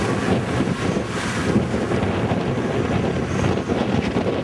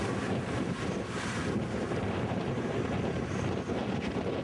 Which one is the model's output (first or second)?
second